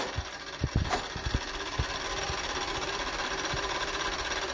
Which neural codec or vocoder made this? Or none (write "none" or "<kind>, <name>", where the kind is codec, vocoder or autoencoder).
vocoder, BigVGAN v2